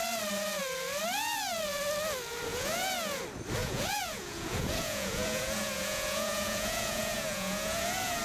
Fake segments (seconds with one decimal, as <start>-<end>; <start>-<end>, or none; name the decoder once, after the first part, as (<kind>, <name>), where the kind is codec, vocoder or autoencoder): 2.5-3.2 (vocoder, Vocos); 3.6-8.2